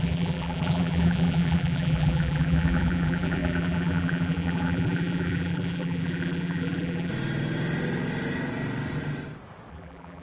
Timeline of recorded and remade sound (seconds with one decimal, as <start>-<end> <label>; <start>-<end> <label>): 0.0-7.1 remade; 7.1-9.7 recorded; 9.7-10.2 remade